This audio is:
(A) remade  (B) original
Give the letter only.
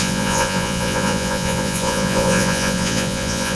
A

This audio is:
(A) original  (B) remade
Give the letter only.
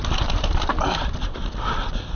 A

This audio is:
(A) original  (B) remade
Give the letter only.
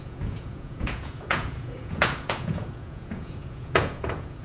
B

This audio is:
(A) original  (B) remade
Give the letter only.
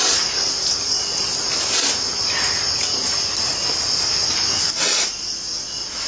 A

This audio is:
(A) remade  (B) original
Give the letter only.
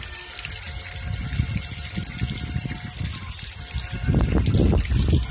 B